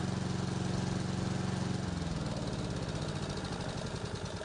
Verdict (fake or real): real